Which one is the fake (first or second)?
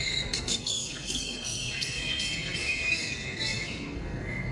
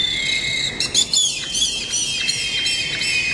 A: first